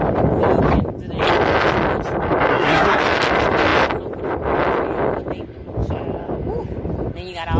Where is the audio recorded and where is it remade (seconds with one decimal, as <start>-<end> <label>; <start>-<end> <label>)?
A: 0.0-2.5 recorded; 2.5-3.0 remade; 3.0-7.6 recorded